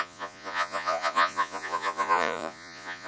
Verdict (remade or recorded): remade